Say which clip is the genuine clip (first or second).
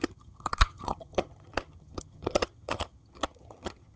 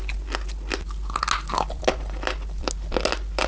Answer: second